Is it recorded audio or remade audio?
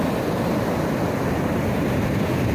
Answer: recorded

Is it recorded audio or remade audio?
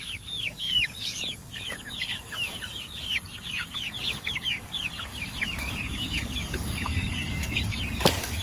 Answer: remade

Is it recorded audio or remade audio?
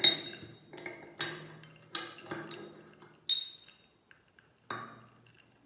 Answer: recorded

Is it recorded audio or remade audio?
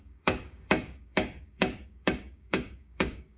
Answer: remade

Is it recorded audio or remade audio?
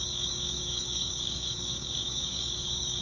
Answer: remade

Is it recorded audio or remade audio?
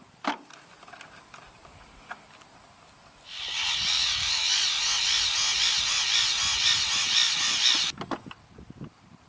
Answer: recorded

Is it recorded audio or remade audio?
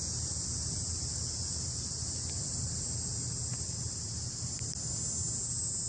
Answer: recorded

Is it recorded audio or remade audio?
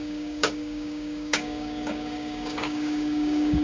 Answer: remade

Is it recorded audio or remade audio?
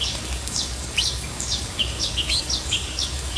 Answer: remade